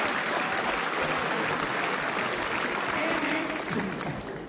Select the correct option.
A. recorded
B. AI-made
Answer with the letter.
A